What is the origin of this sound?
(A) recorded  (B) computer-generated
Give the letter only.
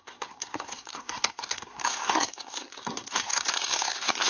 B